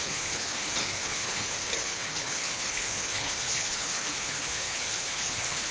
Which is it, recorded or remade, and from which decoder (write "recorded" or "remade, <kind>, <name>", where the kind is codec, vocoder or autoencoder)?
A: remade, codec, HILCodec